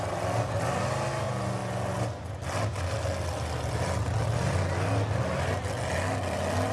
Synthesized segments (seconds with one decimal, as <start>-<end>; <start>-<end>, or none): none